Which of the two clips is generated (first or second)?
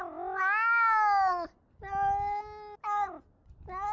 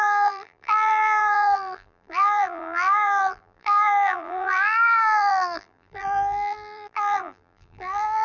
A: second